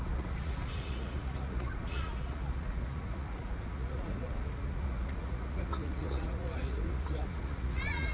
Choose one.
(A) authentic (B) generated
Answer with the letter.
B